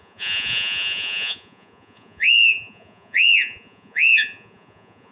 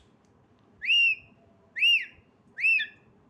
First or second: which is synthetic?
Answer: first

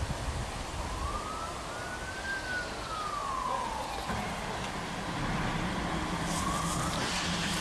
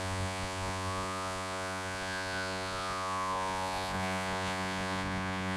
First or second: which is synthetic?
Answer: second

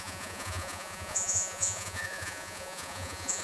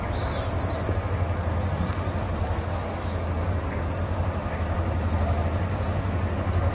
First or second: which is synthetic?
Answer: first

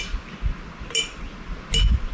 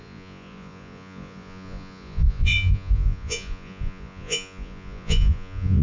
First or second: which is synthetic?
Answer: second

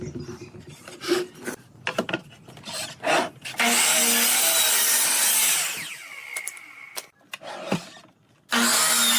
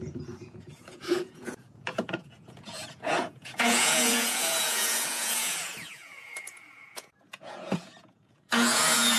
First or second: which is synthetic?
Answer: second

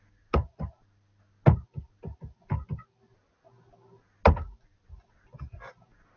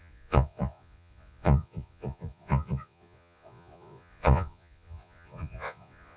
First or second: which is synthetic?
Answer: second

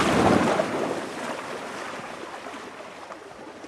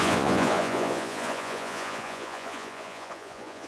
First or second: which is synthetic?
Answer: second